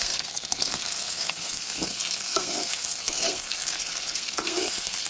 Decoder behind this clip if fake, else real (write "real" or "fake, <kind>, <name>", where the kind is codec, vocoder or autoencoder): fake, codec, SNAC